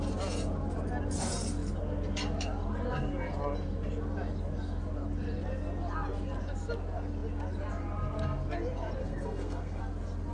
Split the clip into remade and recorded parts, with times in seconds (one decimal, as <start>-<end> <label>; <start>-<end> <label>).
0.0-9.0 recorded; 9.0-9.8 remade; 9.8-10.3 recorded